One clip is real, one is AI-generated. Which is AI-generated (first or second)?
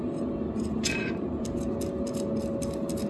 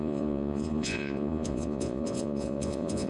second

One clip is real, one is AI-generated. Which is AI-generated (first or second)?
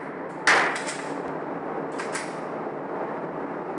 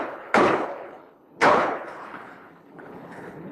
second